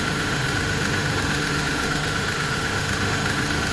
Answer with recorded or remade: remade